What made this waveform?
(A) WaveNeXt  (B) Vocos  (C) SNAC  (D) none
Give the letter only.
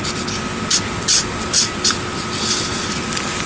D